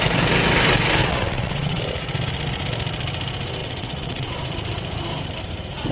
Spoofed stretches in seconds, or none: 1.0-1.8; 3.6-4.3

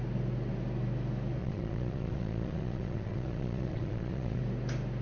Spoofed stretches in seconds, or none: 1.4-4.4

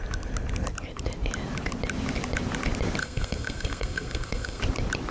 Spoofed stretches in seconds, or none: 3.0-4.6

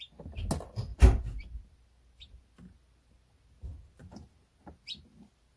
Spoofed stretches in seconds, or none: none

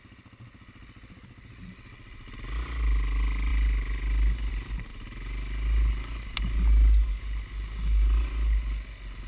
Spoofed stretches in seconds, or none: none